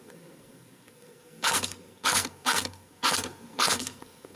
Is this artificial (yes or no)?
yes